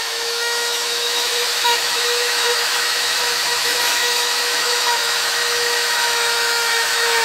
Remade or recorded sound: remade